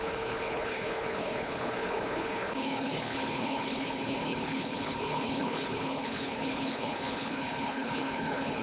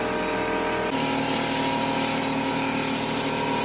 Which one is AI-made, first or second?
first